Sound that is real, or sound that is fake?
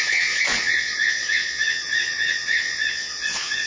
fake